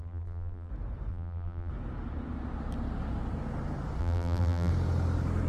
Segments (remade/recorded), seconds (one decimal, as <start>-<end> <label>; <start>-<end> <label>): 0.0-0.7 remade; 0.7-1.1 recorded; 1.1-1.7 remade; 1.7-4.0 recorded; 4.0-4.7 remade; 4.7-5.5 recorded